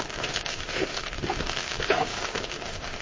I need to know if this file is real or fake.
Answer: fake